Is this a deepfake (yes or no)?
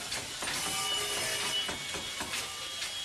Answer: no